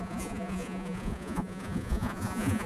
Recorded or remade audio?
remade